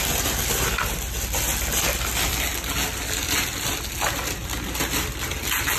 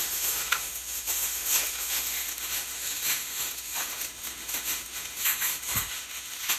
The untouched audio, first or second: first